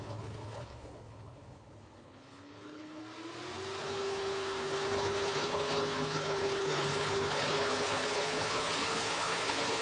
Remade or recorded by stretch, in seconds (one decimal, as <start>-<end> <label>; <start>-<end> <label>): 0.0-3.0 remade; 3.0-3.8 recorded; 3.8-9.8 remade